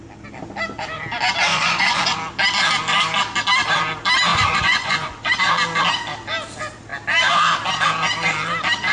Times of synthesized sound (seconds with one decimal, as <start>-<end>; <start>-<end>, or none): 1.5-2.0; 4.3-5.3